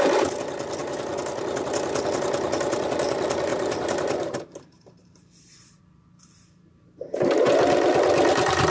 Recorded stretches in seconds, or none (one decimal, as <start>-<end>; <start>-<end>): 0.0-3.5; 5.8-8.7